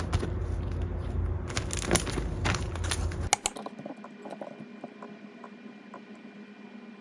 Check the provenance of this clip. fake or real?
real